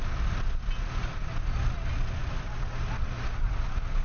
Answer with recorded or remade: recorded